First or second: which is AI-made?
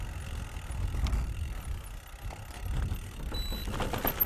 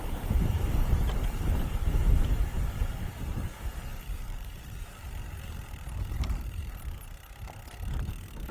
second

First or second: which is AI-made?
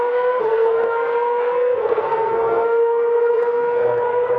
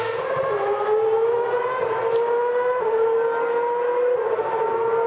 first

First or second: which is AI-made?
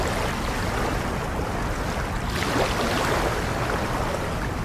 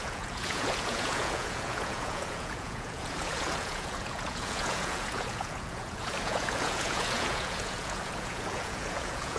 second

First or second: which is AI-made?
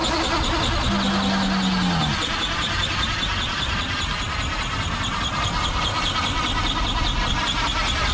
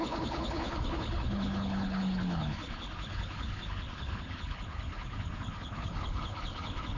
second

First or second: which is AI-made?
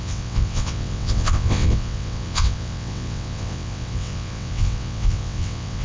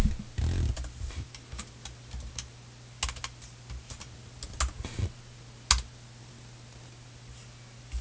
first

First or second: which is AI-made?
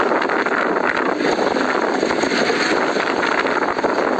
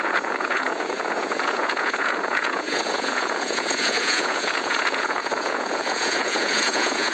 second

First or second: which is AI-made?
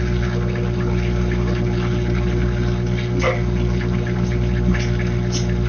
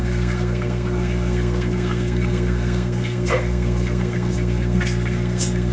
second